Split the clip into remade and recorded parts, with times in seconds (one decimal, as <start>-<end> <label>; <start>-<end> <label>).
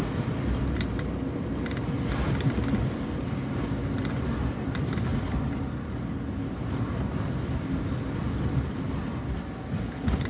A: 0.0-10.3 recorded